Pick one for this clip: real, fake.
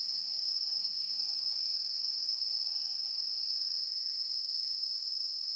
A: fake